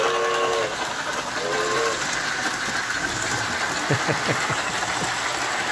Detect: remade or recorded recorded